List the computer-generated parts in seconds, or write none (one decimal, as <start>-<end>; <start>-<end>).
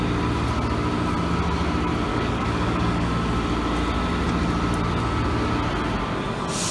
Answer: 2.1-3.1